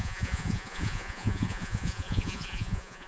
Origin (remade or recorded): remade